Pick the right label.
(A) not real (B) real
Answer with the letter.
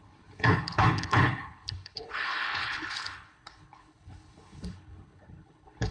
A